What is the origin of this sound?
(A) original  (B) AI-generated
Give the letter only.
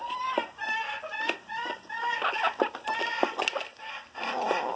A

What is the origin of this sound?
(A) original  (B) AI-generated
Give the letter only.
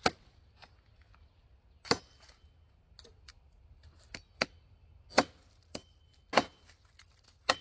A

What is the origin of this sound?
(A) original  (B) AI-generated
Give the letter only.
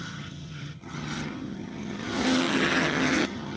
B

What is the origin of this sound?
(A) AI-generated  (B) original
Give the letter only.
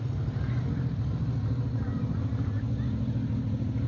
B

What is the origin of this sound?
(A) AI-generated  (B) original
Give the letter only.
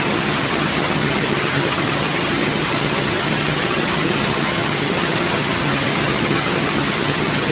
A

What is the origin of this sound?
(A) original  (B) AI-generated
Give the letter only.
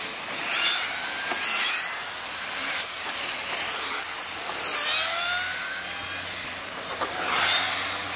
A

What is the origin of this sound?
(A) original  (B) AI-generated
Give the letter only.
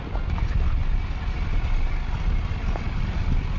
A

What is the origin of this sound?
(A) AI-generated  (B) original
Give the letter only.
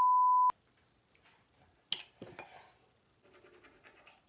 B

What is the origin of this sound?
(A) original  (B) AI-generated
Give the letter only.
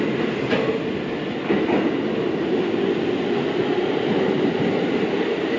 A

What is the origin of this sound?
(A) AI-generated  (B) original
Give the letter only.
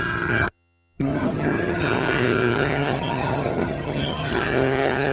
A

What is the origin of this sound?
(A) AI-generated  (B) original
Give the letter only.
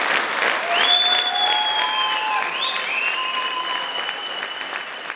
B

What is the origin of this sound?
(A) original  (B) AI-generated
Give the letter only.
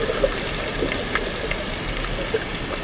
A